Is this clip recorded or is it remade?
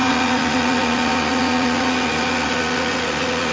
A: remade